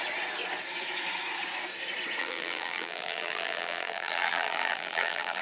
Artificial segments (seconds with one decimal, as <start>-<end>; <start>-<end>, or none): 2.2-5.4